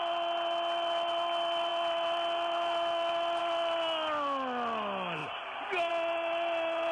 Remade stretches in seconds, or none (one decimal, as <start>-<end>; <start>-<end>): none

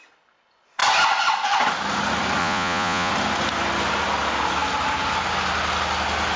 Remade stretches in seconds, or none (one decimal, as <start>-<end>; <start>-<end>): 2.4-3.1

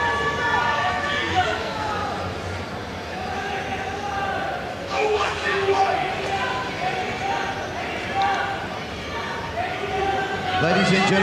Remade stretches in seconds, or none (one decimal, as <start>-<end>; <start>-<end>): 0.6-1.9; 4.7-6.1